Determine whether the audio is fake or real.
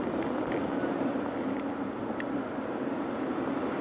real